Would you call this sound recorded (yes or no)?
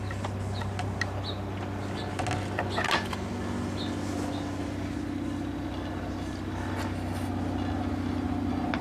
yes